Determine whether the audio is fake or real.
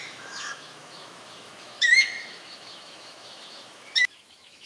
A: fake